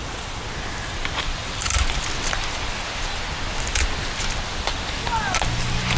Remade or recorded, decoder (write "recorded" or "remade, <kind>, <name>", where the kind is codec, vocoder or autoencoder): recorded